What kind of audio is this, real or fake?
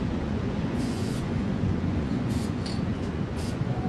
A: fake